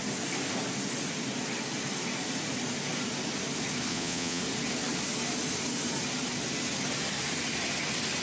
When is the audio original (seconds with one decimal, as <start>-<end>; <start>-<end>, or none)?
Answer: 0.0-3.9; 4.4-8.2